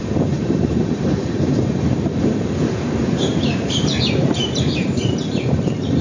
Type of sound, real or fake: fake